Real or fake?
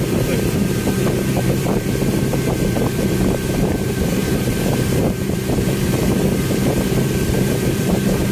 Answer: fake